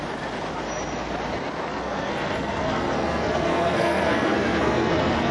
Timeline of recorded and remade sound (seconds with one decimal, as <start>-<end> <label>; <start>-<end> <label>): 0.0-1.7 recorded; 1.7-5.3 remade